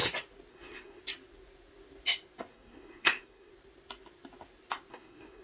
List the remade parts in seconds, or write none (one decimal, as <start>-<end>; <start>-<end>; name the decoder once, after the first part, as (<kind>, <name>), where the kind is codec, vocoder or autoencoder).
0.5-1.0 (codec, SNAC); 2.5-3.5; 4.9-5.4